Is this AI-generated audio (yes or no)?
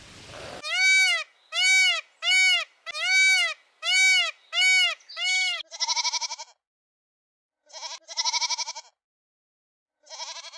no